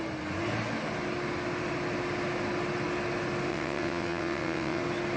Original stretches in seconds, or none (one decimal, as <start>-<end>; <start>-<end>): 0.0-3.5; 4.8-5.2